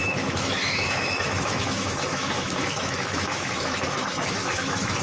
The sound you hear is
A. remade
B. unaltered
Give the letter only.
A